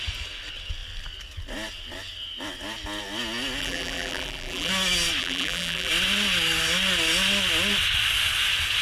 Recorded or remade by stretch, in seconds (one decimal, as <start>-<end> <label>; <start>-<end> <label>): 0.0-3.6 recorded; 3.6-4.7 remade; 4.7-5.2 recorded; 5.2-5.9 remade; 5.9-8.8 recorded